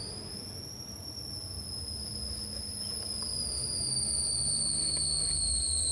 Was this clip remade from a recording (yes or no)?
no